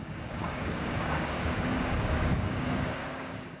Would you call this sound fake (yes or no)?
yes